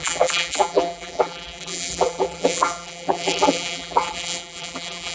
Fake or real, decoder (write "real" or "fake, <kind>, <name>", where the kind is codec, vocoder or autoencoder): fake, vocoder, BigVGAN v2